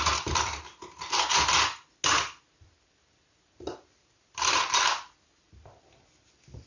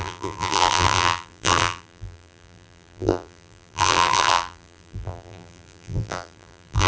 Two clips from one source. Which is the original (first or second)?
first